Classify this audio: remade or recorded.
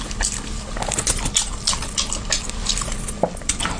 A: recorded